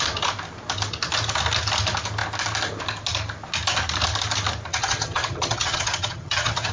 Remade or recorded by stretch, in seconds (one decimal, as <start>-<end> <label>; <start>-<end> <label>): 0.0-4.7 recorded; 4.7-6.7 remade